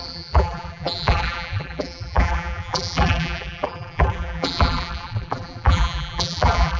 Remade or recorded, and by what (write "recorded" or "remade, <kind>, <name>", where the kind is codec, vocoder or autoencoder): remade, vocoder, BigVGAN v2